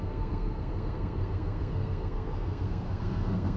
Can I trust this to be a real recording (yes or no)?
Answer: no